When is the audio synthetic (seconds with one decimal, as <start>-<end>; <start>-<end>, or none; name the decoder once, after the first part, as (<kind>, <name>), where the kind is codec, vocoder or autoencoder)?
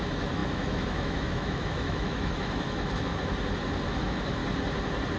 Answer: 0.0-3.1 (autoencoder, DAC-VAE); 3.9-4.4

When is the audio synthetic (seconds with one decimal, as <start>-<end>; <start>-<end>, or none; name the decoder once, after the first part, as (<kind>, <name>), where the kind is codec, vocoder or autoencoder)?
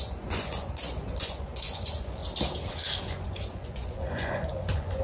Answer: 0.0-2.2 (vocoder, Vocos); 3.0-5.0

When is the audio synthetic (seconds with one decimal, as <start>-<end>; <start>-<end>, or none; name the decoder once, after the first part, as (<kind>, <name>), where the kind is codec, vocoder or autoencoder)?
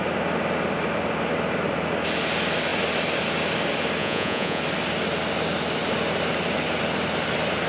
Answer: 4.0-4.6 (vocoder, Vocos)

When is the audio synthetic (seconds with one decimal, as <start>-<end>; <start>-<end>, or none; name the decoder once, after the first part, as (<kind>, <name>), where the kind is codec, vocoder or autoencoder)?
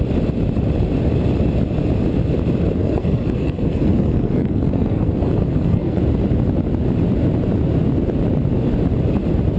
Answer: 2.8-6.0 (codec, SNAC)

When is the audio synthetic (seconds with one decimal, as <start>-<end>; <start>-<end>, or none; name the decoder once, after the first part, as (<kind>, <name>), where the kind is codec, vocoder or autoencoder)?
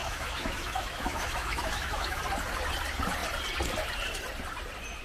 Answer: 0.0-2.2 (autoencoder, DAC-VAE)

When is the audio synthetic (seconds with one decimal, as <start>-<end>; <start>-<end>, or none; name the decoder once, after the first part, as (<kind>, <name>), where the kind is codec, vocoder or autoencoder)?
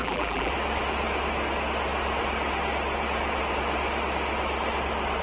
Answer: 0.0-0.5 (vocoder, BigVGAN v2)